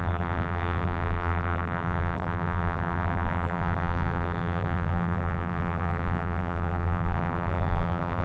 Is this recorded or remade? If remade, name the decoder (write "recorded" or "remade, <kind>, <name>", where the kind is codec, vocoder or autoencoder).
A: remade, vocoder, BigVGAN v2